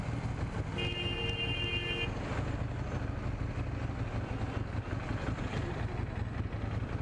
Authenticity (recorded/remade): recorded